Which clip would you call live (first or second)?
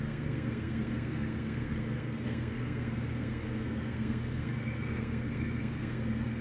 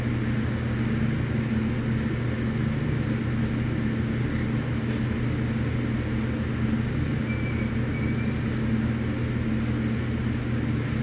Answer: second